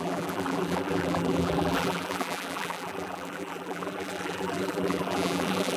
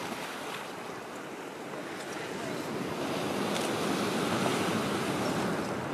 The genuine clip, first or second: second